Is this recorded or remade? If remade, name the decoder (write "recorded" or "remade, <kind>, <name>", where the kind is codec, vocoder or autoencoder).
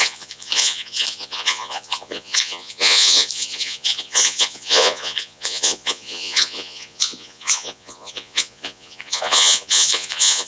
remade, vocoder, Vocos